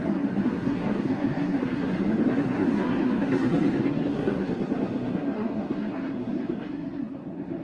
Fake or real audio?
fake